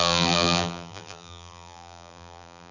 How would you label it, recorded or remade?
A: remade